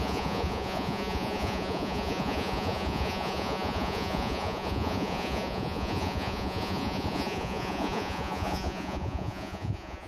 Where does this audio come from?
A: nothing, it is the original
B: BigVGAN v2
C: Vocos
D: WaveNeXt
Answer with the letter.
C